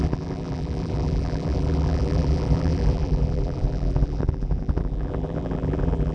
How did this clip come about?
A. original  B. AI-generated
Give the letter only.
B